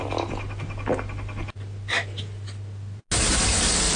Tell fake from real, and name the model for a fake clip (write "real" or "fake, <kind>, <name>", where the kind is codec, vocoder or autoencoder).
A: real